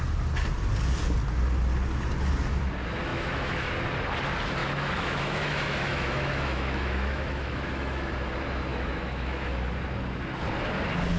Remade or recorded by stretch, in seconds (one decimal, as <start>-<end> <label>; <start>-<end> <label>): 0.0-3.1 recorded; 3.1-3.7 remade; 3.7-4.6 recorded; 4.6-8.1 remade; 8.1-8.7 recorded; 8.7-9.5 remade; 9.5-11.2 recorded